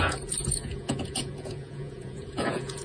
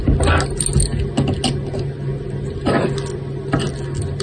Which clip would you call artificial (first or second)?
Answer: first